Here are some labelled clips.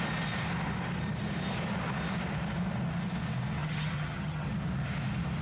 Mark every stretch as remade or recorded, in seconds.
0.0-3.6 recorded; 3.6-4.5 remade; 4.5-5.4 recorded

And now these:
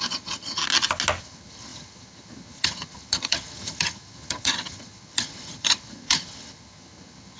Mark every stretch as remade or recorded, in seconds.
0.0-0.6 remade; 0.6-1.2 recorded; 1.2-7.4 remade

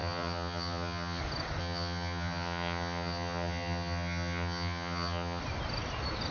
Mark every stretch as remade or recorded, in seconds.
0.0-1.2 remade; 1.2-1.6 recorded; 1.6-5.4 remade; 5.4-6.3 recorded

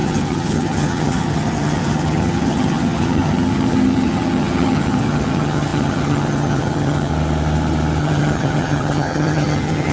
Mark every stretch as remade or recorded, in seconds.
0.0-7.1 remade; 7.1-8.0 recorded; 8.0-9.9 remade

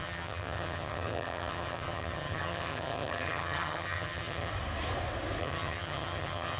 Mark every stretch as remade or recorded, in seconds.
0.0-4.5 remade; 4.5-5.4 recorded; 5.4-6.6 remade

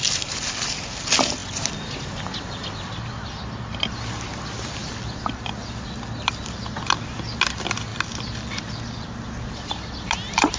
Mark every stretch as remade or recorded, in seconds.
0.0-10.6 recorded

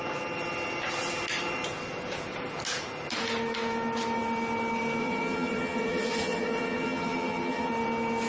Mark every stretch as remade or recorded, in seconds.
0.0-5.0 recorded; 5.0-7.7 remade; 7.7-8.3 recorded